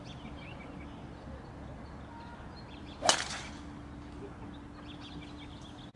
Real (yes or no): yes